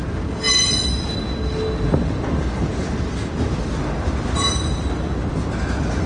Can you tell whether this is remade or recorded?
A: recorded